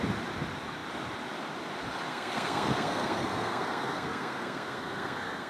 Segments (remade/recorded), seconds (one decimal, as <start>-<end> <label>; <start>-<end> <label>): 0.0-2.1 recorded; 2.1-5.5 remade